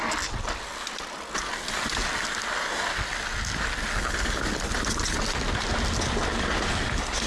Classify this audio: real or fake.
real